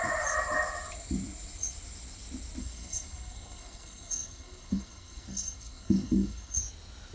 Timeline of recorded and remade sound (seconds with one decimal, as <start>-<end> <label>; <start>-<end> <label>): 0.0-2.6 recorded; 2.6-6.6 remade; 6.6-7.1 recorded